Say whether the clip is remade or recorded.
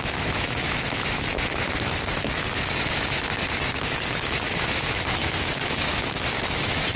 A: remade